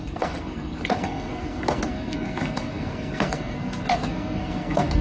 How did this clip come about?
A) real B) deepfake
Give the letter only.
B